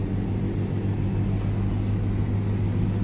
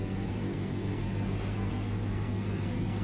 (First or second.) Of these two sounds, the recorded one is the first